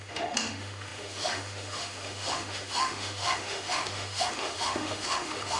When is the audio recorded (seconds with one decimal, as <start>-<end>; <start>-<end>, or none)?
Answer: none